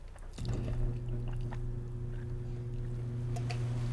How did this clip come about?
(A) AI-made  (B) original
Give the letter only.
B